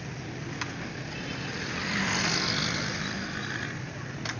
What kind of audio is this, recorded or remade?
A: recorded